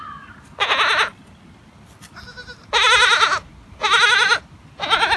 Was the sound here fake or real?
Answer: real